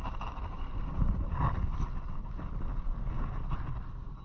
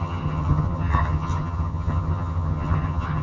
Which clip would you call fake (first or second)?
second